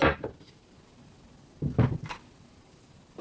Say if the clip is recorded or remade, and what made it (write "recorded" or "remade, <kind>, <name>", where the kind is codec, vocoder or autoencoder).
recorded